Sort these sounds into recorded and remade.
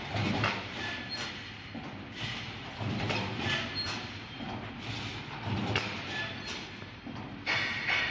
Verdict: recorded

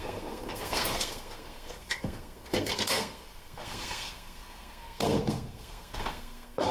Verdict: remade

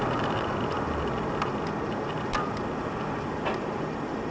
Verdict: recorded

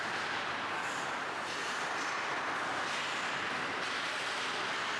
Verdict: recorded